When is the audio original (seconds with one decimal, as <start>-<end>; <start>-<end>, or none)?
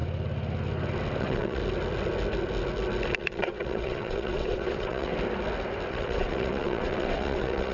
0.0-1.2; 1.6-3.1; 5.1-5.9